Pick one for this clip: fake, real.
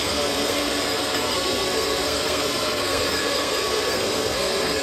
fake